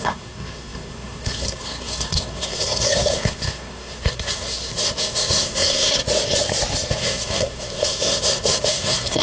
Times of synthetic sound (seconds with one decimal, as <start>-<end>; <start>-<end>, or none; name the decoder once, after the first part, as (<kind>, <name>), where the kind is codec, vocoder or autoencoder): 0.0-6.0 (codec, SNAC); 6.9-9.2